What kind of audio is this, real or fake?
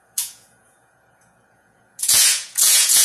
fake